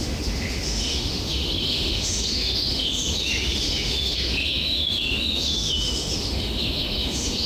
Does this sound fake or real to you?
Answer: fake